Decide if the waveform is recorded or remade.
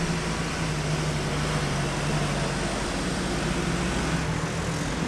recorded